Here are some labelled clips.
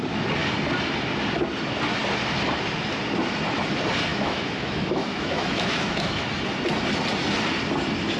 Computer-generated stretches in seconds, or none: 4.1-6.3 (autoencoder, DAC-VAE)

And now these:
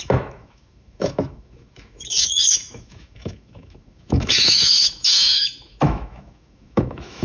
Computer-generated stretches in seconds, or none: 0.0-7.2 (autoencoder, DAC-VAE)

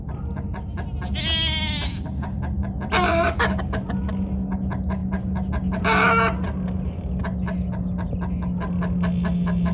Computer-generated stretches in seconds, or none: 3.1-3.6 (autoencoder, DAC-VAE)

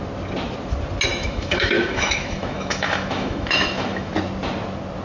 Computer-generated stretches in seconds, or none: 1.1-4.1 (autoencoder, DAC-VAE)

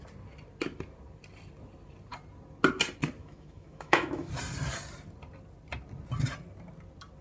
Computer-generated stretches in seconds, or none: 3.2-4.3 (autoencoder, DAC-VAE)